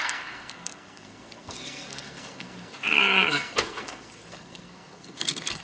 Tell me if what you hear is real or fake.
fake